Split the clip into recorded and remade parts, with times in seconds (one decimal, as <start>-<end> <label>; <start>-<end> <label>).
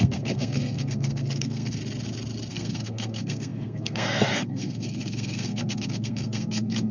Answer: 0.0-1.8 remade; 1.8-2.5 recorded; 2.5-6.9 remade